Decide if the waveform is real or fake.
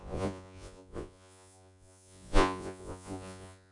fake